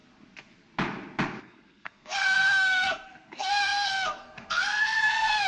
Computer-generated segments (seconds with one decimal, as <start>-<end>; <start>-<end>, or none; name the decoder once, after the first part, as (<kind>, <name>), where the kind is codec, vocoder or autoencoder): 1.4-5.5 (codec, SNAC)